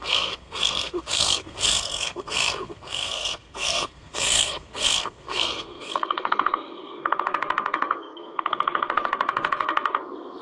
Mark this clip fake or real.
fake